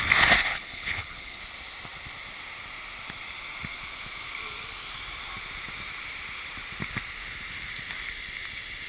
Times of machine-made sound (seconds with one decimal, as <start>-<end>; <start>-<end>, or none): 0.5-1.4